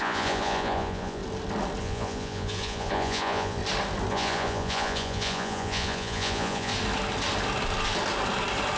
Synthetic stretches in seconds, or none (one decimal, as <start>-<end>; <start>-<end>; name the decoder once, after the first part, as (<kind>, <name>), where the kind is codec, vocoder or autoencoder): 0.0-1.2 (vocoder, Vocos); 1.8-3.6; 4.1-6.7